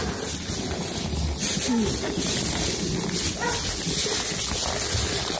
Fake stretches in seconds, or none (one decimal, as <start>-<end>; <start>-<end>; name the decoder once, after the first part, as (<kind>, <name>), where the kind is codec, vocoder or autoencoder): none